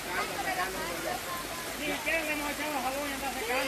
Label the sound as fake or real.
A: real